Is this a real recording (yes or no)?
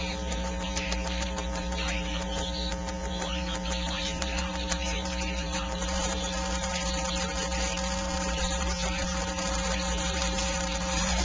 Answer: no